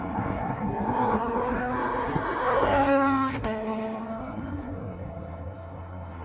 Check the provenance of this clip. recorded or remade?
remade